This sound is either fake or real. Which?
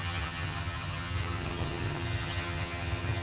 fake